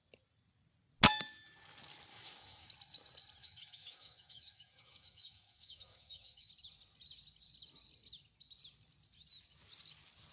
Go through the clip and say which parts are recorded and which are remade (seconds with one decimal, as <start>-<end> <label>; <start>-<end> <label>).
0.0-2.1 recorded; 2.1-2.7 remade; 2.7-3.4 recorded; 3.4-6.5 remade; 6.5-10.3 recorded